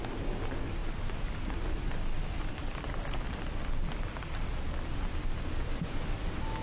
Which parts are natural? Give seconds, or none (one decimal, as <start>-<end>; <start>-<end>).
0.0-6.6